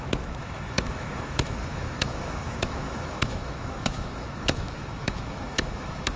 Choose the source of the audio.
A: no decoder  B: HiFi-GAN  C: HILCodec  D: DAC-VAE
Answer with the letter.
D